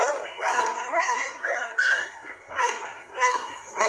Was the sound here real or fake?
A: fake